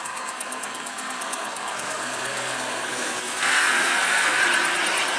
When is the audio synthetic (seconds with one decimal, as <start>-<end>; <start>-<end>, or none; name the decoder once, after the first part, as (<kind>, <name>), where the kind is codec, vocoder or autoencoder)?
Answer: 0.0-4.4 (codec, SNAC)